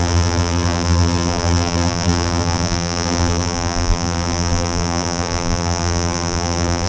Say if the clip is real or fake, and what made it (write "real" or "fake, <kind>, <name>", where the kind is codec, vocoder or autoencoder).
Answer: fake, vocoder, BigVGAN v2